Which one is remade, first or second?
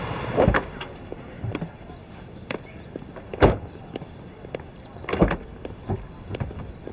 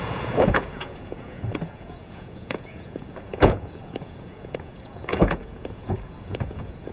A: second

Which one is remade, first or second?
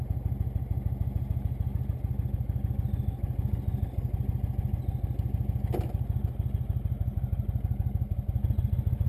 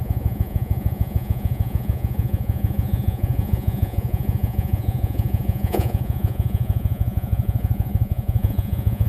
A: second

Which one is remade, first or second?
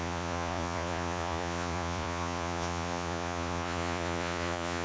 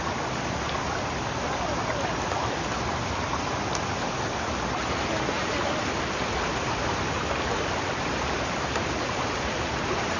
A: first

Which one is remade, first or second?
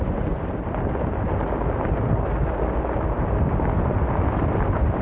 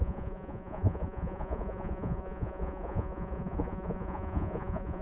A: second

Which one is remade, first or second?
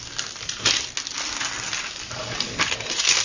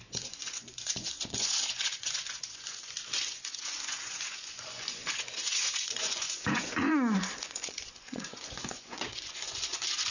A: second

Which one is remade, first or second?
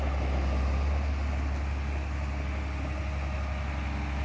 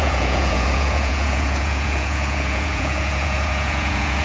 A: second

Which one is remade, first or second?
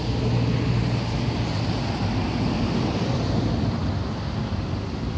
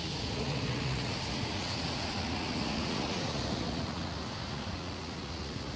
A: second